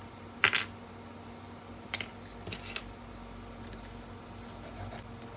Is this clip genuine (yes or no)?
yes